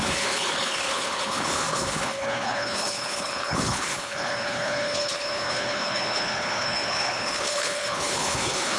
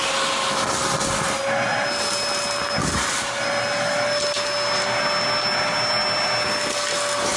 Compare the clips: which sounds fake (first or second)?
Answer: first